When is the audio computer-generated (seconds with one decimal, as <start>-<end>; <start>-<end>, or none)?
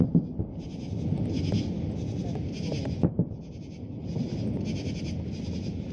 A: none